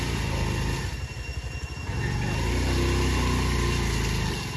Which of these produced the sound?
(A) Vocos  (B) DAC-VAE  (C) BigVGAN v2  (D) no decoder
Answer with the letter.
D